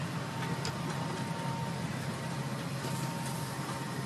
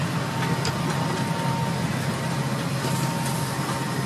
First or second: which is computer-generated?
first